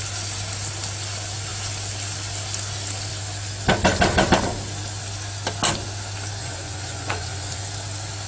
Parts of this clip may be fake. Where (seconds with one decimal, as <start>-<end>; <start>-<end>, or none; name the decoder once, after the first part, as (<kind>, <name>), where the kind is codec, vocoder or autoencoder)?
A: 6.4-7.6 (vocoder, Vocos)